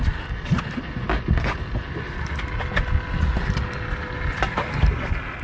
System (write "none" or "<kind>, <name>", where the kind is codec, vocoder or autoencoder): none